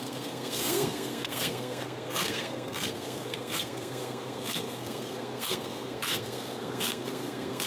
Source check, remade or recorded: remade